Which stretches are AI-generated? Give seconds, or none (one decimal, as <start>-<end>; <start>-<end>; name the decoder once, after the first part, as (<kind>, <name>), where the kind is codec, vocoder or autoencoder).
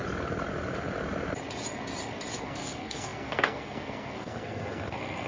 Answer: 2.4-5.3 (codec, SNAC)